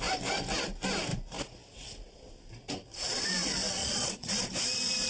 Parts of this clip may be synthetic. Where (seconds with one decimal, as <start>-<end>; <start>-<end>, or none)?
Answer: 3.8-4.4